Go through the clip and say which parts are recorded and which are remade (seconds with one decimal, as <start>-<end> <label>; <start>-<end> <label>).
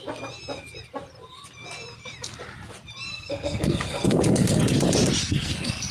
0.0-3.1 recorded; 3.1-4.6 remade; 4.6-5.2 recorded; 5.2-5.9 remade